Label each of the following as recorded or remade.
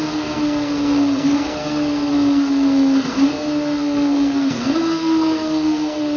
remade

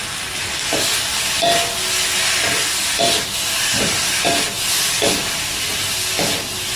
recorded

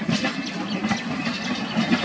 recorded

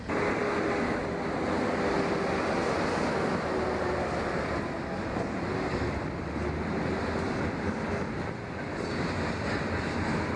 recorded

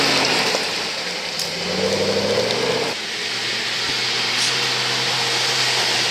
recorded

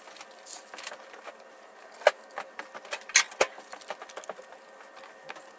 recorded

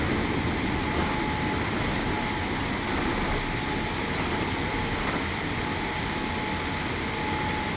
recorded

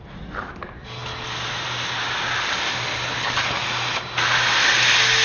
recorded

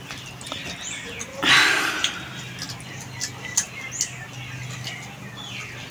recorded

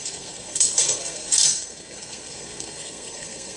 remade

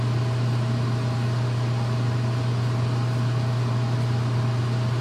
recorded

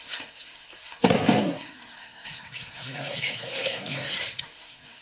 remade